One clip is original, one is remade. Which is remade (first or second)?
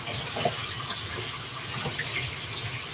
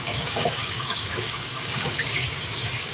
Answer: second